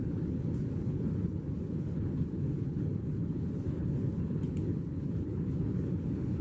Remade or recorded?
remade